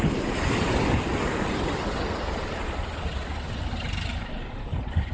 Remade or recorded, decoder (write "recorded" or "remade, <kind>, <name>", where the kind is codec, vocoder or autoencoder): recorded